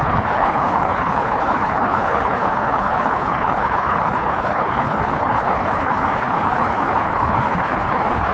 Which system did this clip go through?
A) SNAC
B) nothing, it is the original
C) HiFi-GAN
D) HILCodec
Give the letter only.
D